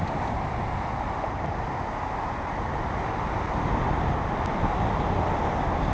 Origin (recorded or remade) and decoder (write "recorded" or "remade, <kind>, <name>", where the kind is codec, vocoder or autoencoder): recorded